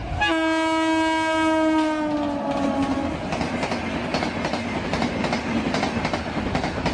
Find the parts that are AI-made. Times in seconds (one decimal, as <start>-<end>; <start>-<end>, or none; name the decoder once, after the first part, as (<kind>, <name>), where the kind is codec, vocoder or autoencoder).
none